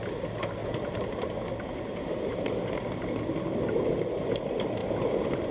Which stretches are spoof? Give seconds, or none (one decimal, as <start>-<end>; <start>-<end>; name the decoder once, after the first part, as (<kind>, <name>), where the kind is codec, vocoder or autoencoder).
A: none